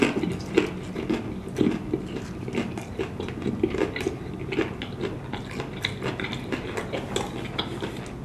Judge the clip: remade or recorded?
recorded